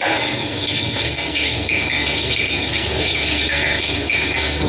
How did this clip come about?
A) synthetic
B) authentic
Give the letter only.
A